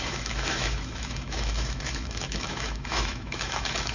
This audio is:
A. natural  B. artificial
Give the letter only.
B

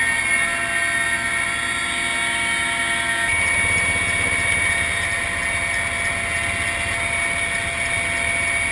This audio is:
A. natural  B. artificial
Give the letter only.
A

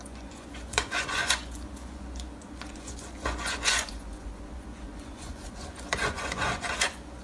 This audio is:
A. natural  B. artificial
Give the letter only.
B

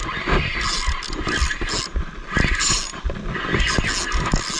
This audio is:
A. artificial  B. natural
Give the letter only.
B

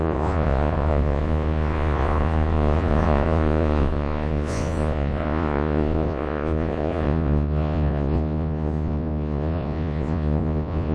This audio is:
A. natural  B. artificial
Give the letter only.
B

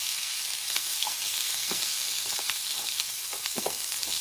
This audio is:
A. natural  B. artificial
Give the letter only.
B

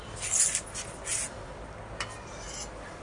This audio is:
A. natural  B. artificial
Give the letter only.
A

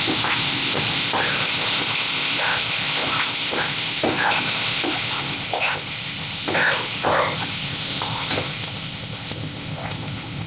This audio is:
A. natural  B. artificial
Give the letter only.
B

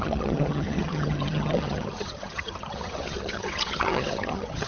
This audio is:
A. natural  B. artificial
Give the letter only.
B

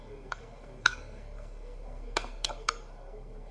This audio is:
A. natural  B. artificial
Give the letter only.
B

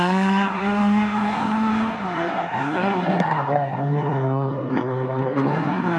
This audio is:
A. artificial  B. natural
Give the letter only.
A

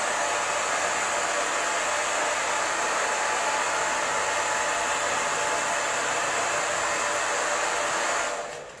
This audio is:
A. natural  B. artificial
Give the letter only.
A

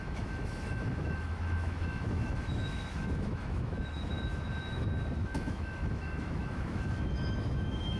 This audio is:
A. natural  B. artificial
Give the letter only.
B